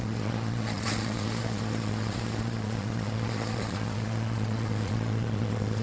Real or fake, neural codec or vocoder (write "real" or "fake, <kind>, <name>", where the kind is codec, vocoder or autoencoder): fake, vocoder, Vocos